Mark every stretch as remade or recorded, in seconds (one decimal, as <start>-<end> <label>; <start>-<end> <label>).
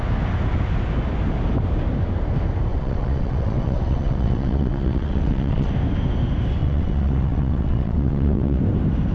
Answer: 0.0-2.7 recorded; 2.7-5.7 remade; 5.7-6.6 recorded; 6.6-8.6 remade; 8.6-9.1 recorded